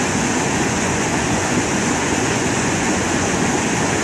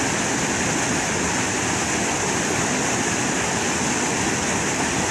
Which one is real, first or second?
second